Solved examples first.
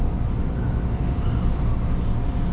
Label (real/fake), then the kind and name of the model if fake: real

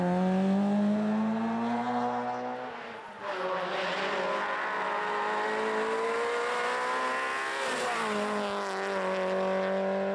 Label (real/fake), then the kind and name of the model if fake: real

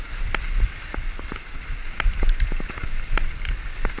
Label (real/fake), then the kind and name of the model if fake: real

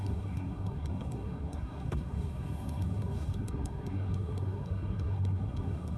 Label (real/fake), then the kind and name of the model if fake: fake, codec, SNAC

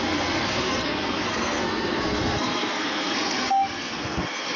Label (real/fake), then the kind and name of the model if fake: fake, codec, SNAC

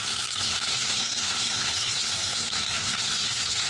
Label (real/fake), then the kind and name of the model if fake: fake, codec, SNAC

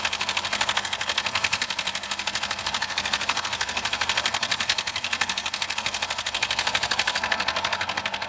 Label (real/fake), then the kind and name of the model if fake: fake, codec, SNAC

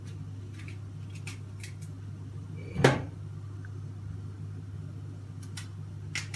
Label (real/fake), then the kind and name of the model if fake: real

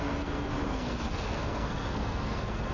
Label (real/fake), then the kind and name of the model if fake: fake, codec, SNAC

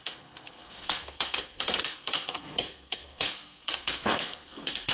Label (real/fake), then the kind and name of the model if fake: fake, codec, SNAC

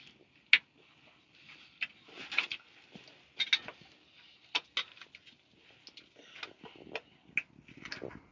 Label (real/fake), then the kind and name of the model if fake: real